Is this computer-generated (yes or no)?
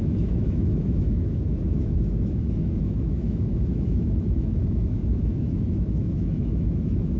yes